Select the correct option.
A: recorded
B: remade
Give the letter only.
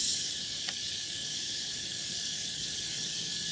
B